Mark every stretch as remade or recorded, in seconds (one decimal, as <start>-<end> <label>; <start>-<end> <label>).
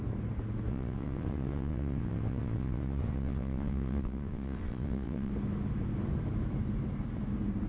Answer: 0.0-0.7 recorded; 0.7-5.3 remade; 5.3-7.7 recorded